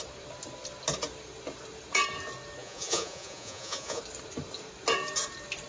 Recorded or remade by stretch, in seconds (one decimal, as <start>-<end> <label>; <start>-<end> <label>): 0.0-2.6 recorded; 2.6-4.0 remade; 4.0-5.7 recorded